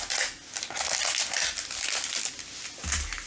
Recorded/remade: recorded